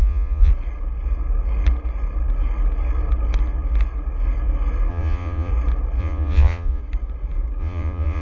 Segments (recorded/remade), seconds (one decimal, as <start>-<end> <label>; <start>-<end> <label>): 0.0-0.5 remade; 0.5-4.9 recorded; 4.9-5.5 remade; 5.5-6.0 recorded; 6.0-6.8 remade; 6.8-7.6 recorded; 7.6-8.2 remade